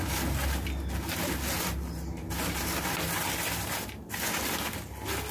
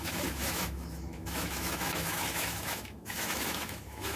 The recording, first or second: first